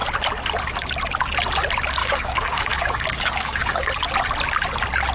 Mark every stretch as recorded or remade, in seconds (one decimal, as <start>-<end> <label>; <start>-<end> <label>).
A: 0.0-2.0 recorded; 2.0-3.9 remade; 3.9-5.1 recorded